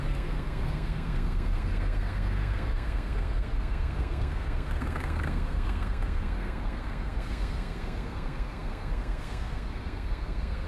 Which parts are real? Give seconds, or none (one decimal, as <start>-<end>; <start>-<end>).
none